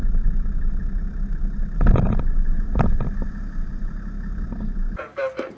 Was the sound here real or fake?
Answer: real